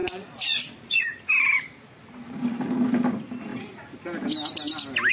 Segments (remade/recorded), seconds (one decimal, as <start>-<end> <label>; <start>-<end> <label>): 0.0-1.0 remade; 1.0-5.1 recorded